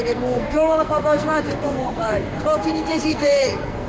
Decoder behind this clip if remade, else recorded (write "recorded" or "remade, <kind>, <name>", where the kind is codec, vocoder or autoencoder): remade, codec, SNAC